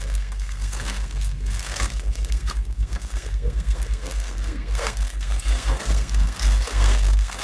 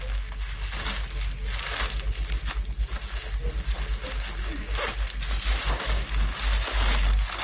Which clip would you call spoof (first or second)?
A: first